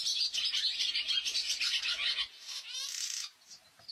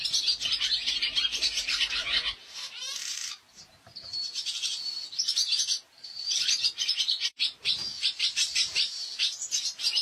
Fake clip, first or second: second